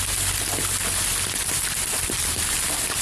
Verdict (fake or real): real